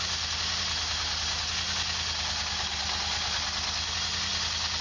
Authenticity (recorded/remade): recorded